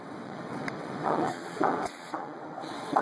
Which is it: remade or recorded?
remade